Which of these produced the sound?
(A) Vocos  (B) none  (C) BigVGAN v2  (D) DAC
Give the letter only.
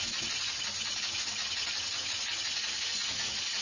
B